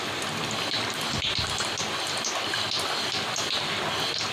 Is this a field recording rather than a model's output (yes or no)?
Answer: yes